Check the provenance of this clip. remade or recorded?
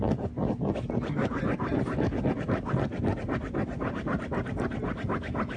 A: recorded